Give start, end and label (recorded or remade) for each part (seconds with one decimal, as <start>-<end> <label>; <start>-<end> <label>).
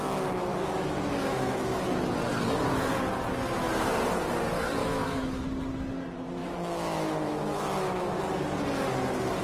0.0-0.5 recorded; 0.5-2.1 remade; 2.1-4.8 recorded; 4.8-5.4 remade; 5.4-6.4 recorded; 6.4-8.2 remade; 8.2-9.4 recorded